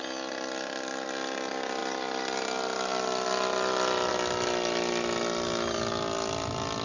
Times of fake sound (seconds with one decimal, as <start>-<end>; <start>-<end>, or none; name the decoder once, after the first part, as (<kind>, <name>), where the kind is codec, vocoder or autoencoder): none